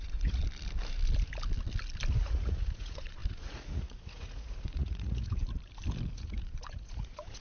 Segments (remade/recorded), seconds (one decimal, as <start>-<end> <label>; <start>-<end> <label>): 0.0-0.4 remade; 0.4-2.2 recorded; 2.2-5.4 remade; 5.4-6.1 recorded; 6.1-7.4 remade